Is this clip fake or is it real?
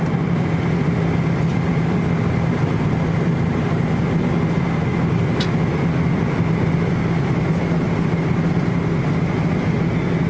real